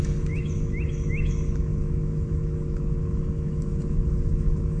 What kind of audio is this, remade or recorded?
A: remade